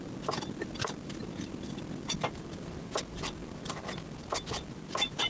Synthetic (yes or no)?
yes